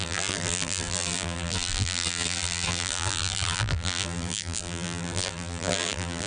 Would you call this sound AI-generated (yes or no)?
yes